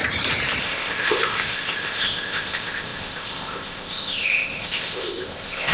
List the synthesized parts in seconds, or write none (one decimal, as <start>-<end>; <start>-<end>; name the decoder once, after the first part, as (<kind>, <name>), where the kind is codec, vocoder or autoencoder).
0.6-5.7 (codec, ZipCodec)